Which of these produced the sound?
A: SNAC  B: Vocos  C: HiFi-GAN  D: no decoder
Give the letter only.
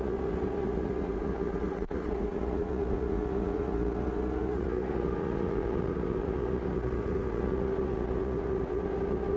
B